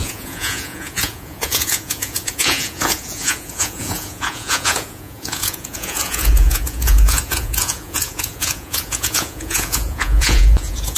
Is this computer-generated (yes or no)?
yes